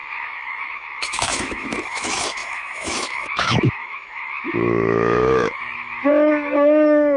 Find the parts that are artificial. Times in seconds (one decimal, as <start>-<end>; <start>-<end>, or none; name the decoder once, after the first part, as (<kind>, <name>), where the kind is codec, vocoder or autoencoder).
0.0-7.2 (autoencoder, DAC-VAE)